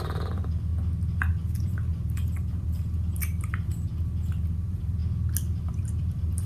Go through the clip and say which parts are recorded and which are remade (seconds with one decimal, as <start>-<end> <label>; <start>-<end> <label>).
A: 0.0-0.7 remade; 0.7-1.2 recorded; 1.2-3.9 remade; 3.9-4.4 recorded; 4.4-5.0 remade; 5.0-5.7 recorded; 5.7-6.5 remade